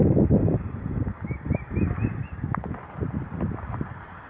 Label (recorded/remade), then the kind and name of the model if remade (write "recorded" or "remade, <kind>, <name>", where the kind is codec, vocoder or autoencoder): recorded